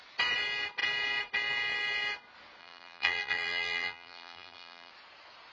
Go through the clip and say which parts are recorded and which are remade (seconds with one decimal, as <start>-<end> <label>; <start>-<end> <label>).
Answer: 0.0-2.6 recorded; 2.6-4.9 remade; 4.9-5.5 recorded